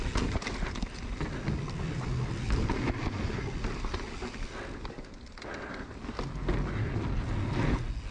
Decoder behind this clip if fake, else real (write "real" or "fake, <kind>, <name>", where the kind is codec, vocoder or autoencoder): real